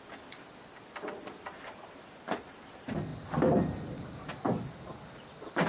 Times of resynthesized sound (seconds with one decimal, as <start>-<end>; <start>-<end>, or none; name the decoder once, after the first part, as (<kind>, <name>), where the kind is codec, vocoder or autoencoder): none